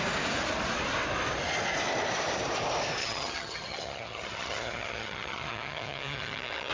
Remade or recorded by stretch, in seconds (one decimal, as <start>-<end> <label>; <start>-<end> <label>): 0.0-3.0 recorded; 3.0-6.7 remade